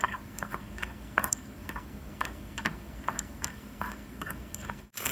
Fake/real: fake